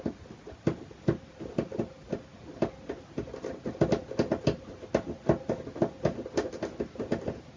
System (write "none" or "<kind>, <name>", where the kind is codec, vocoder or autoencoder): none